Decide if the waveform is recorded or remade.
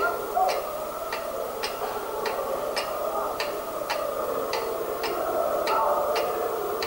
recorded